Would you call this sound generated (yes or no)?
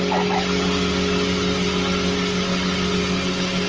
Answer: no